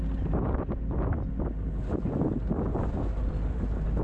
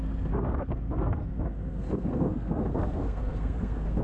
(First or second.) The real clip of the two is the first